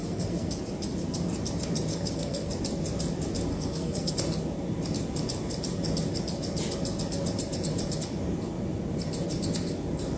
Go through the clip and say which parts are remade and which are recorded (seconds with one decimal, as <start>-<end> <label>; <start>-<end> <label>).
0.0-0.6 remade; 0.6-1.9 recorded; 1.9-2.5 remade; 2.5-3.5 recorded; 3.5-4.1 remade; 4.1-10.2 recorded